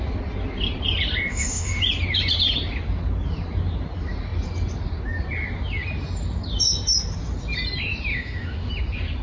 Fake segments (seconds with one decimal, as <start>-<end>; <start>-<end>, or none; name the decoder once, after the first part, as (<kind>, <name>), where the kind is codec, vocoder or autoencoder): 1.3-1.8 (autoencoder, DAC-VAE); 8.1-8.7